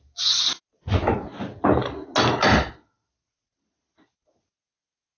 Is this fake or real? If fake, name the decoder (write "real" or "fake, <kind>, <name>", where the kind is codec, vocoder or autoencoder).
real